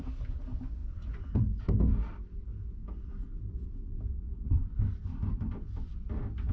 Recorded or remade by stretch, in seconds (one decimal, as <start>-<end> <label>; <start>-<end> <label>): 0.0-6.5 recorded